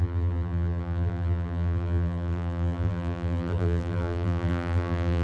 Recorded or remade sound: remade